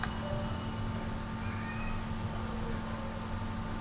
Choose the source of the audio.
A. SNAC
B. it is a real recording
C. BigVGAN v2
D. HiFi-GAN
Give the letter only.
B